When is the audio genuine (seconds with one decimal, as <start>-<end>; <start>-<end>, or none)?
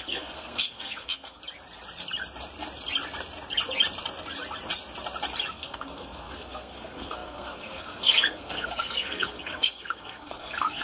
1.4-5.5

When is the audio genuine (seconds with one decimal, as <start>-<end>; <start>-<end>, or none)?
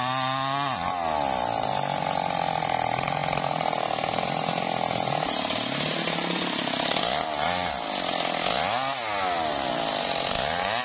0.0-10.8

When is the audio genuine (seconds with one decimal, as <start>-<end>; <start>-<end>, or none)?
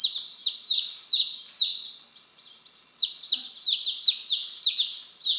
0.0-5.4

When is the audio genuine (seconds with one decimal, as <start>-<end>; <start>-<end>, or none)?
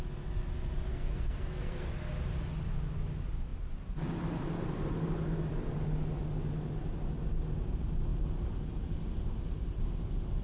0.0-0.9; 1.9-10.4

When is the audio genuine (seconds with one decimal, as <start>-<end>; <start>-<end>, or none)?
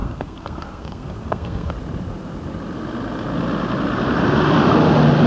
1.7-5.3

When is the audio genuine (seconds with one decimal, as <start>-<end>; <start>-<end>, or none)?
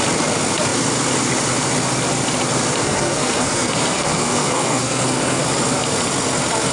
0.0-2.8; 5.4-6.7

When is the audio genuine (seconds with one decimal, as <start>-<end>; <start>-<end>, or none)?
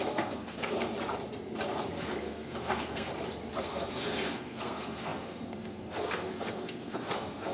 0.9-2.2; 3.1-3.6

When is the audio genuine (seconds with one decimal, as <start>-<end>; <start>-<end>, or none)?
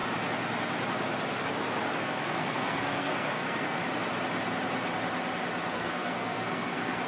0.0-2.0; 3.8-5.7